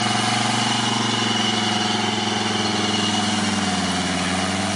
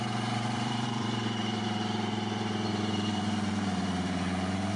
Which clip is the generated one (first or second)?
second